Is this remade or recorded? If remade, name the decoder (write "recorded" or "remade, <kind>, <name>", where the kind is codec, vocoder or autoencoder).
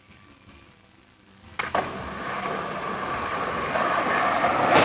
recorded